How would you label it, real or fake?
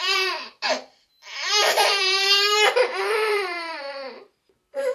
fake